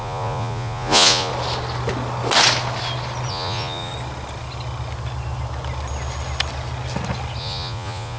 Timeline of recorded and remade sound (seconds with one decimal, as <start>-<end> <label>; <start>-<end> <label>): 0.0-1.3 remade; 1.3-3.3 recorded; 3.3-3.9 remade; 3.9-7.4 recorded; 7.4-8.2 remade